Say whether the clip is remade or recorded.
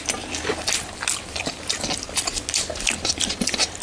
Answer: recorded